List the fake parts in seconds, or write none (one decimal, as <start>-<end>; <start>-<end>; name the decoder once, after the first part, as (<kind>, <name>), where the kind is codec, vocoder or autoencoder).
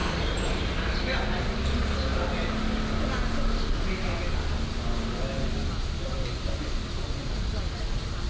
0.0-0.6 (vocoder, BigVGAN v2); 7.2-7.8